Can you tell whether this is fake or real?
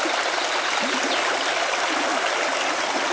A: real